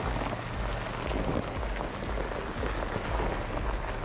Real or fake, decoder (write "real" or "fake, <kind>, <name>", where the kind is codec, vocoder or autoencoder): real